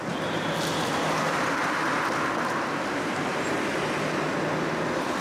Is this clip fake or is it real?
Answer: real